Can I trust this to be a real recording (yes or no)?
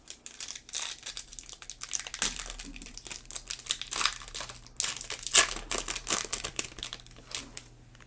yes